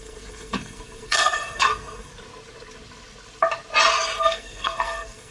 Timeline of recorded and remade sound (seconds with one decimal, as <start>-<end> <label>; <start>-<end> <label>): 0.0-2.1 remade; 2.1-4.2 recorded; 4.2-5.3 remade